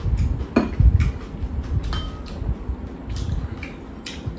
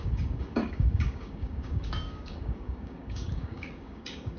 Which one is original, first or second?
first